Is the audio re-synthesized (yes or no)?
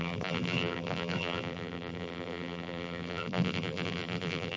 yes